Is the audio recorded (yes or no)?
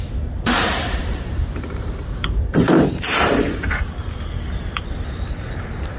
no